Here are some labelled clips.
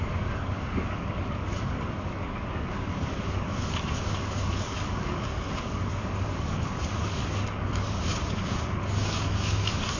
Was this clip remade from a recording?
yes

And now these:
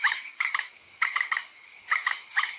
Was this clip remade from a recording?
yes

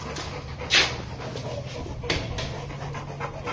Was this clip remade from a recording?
no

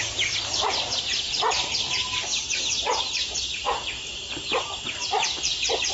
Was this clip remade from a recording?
no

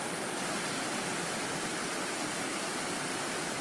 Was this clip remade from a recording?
no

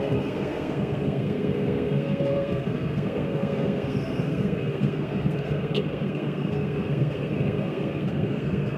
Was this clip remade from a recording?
yes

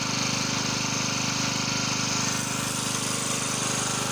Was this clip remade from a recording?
no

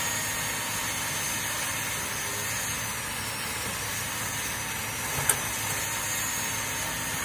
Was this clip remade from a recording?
no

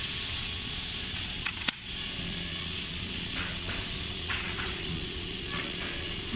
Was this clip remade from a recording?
yes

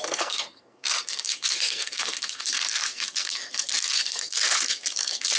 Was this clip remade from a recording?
yes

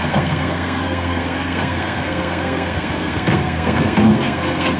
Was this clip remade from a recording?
yes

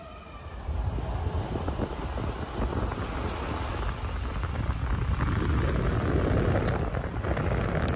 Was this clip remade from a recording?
no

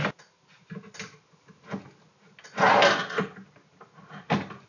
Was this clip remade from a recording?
no